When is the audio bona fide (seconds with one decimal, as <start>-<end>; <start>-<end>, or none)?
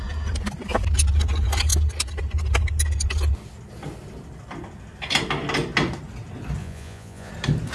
0.0-6.6; 7.3-7.7